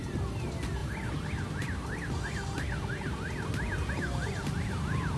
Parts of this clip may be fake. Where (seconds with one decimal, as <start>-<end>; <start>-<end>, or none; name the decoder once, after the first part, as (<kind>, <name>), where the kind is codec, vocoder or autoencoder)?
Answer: none